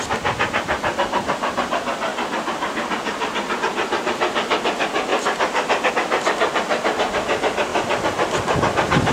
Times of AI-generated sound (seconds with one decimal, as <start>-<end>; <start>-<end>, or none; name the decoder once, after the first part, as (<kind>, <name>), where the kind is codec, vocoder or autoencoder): 0.0-9.1 (vocoder, BigVGAN v2)